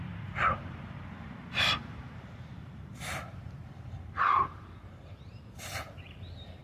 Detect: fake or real fake